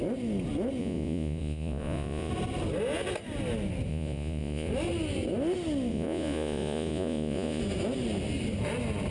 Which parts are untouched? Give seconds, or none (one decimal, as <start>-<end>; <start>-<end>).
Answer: 0.0-0.8; 2.3-3.9; 4.7-5.9; 7.6-9.1